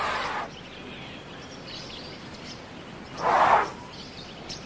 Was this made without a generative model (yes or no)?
yes